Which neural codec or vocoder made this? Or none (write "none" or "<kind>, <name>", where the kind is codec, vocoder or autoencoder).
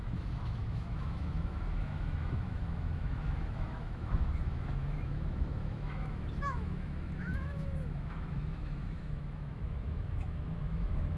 autoencoder, DAC-VAE